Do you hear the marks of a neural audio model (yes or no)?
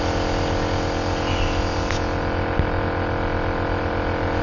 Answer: no